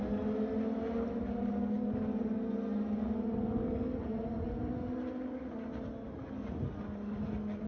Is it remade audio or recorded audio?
recorded